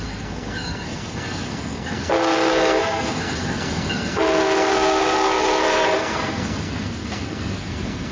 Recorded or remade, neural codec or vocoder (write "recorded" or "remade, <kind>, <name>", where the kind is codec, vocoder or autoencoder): remade, codec, SNAC